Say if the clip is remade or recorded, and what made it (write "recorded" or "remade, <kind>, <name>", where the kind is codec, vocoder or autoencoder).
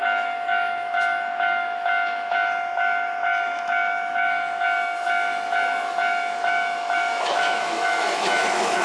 remade, autoencoder, DAC-VAE